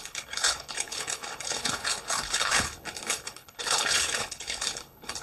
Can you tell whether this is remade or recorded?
remade